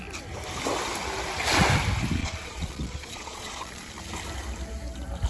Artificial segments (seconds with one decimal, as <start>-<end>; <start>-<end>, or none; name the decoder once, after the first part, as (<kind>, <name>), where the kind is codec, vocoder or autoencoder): 2.2-4.0 (vocoder, Vocos)